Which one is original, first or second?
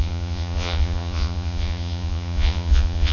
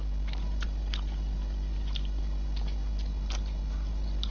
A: second